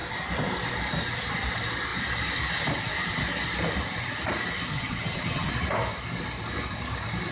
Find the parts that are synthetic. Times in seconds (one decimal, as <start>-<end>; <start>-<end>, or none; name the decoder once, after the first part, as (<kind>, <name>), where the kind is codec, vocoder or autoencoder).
4.7-5.5 (vocoder, HiFi-GAN)